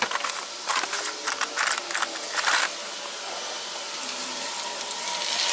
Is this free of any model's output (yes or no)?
yes